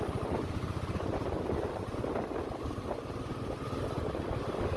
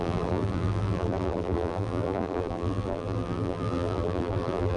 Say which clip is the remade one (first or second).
second